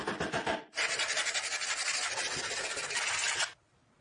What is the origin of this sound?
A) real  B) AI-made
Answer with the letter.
A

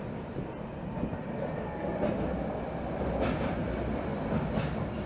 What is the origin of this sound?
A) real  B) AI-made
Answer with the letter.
A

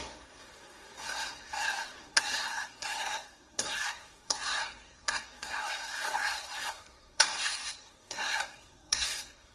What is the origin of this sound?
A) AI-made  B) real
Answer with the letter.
A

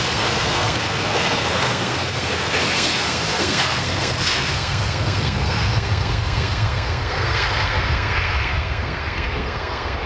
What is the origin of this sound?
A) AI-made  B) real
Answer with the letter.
A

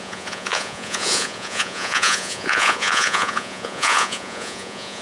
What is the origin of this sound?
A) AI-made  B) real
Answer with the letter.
A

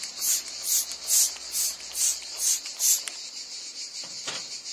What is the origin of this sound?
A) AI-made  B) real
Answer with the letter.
A